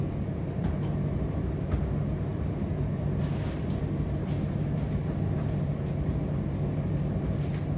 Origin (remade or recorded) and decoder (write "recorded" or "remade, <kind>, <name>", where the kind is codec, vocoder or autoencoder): recorded